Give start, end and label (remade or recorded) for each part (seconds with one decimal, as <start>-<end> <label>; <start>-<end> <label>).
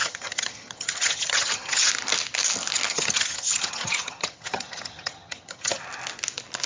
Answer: 0.0-1.9 remade; 1.9-2.9 recorded; 2.9-5.8 remade; 5.8-6.7 recorded